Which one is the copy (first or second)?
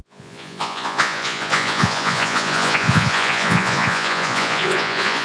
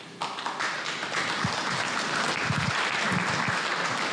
first